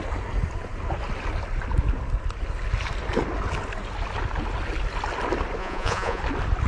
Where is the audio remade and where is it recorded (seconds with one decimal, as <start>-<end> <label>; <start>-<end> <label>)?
0.0-5.6 recorded; 5.6-6.2 remade; 6.2-6.7 recorded